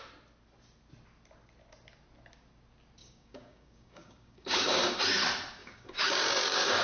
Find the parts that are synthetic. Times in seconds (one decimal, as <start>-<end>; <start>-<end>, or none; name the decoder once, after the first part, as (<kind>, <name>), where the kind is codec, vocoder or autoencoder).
3.0-5.0 (codec, DAC); 5.6-6.8